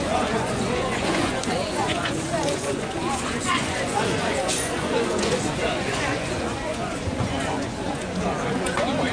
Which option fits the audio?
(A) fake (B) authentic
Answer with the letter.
A